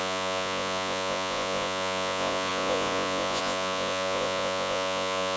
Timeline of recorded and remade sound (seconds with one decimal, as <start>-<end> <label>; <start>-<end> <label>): 0.0-5.4 remade